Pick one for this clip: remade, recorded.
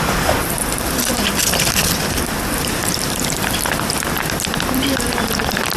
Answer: remade